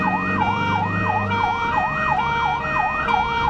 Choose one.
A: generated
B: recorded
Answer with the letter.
A